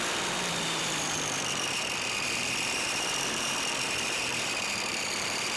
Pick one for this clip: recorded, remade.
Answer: remade